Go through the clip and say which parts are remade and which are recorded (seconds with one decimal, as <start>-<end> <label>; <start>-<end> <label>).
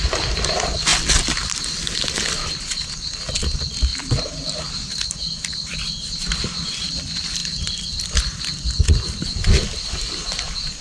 0.0-3.9 recorded; 3.9-6.7 remade; 6.7-10.8 recorded